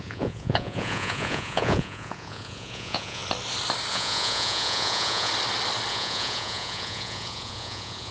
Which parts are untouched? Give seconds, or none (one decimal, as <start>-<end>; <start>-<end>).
3.2-3.9; 5.3-5.9